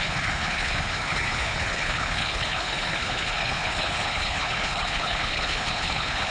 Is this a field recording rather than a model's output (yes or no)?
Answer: no